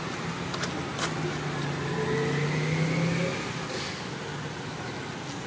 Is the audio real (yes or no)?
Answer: yes